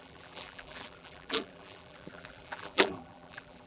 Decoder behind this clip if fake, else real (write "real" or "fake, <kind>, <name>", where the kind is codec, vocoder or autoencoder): fake, vocoder, BigVGAN v2